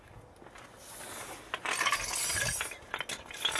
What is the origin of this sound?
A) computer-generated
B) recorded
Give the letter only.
B